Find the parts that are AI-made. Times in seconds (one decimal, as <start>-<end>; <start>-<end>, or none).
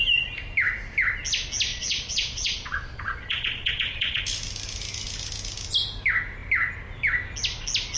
1.7-4.2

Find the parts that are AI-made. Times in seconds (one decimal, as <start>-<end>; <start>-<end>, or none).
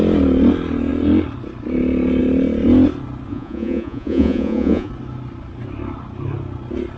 3.3-4.9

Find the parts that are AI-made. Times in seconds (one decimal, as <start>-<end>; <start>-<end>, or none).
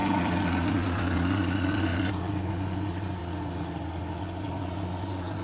0.0-3.2; 4.2-5.4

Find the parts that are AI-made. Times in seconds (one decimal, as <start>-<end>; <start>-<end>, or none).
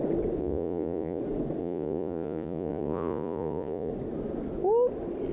0.4-1.2; 1.6-3.9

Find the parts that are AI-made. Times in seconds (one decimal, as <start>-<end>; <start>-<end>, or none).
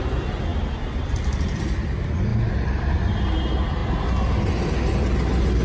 none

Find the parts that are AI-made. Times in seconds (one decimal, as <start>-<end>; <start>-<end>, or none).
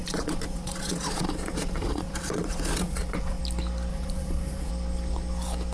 0.0-3.4; 3.9-4.7